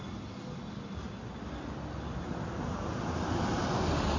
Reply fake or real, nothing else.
real